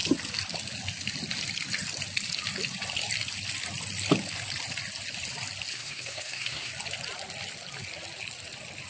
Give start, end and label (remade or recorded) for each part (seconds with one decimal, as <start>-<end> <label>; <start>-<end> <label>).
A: 0.0-5.7 recorded; 5.7-6.7 remade; 6.7-8.9 recorded